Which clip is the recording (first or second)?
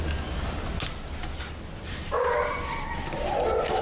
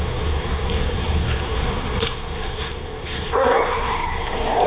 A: first